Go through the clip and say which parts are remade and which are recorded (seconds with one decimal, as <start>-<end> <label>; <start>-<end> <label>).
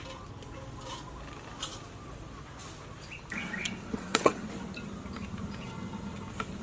0.0-3.6 recorded; 3.6-4.5 remade; 4.5-6.6 recorded